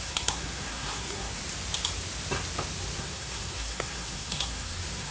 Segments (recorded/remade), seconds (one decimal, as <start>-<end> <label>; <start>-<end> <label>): 0.0-1.4 remade; 1.4-3.0 recorded; 3.0-5.1 remade

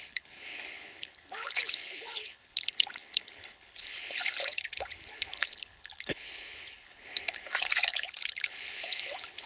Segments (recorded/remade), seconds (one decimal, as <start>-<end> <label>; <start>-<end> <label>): 0.0-9.5 remade

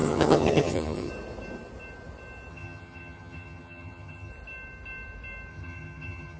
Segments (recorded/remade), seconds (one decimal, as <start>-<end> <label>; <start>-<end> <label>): 0.0-1.1 remade; 1.1-2.5 recorded; 2.5-4.3 remade; 4.3-5.5 recorded; 5.5-6.4 remade

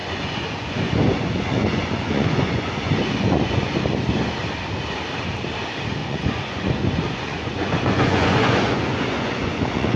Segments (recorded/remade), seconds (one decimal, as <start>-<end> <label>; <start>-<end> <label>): 0.0-3.8 remade; 3.8-6.0 recorded; 6.0-10.0 remade

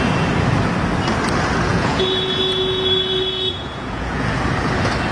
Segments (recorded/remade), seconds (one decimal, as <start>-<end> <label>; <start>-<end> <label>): 0.0-1.7 recorded; 1.7-4.3 remade; 4.3-5.1 recorded

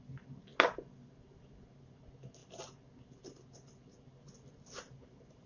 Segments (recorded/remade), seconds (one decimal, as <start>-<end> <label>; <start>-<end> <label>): 0.0-5.5 recorded

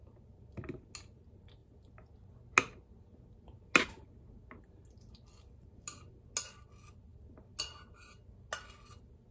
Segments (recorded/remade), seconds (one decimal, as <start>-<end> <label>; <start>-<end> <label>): 0.0-9.3 recorded